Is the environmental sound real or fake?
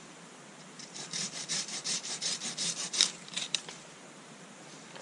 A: fake